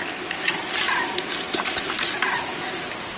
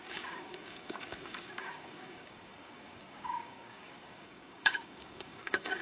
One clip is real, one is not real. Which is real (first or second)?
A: first